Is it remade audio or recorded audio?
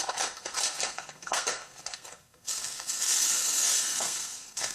remade